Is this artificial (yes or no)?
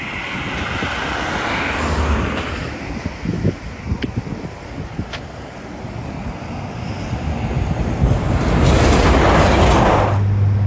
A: no